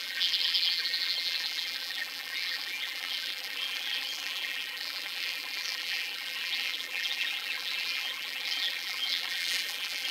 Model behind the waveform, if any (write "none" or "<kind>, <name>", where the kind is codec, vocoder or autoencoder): vocoder, BigVGAN v2